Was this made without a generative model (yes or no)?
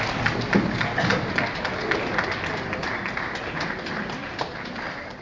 yes